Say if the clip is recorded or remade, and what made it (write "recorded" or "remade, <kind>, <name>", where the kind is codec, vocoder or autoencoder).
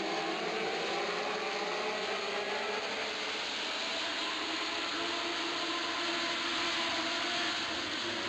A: recorded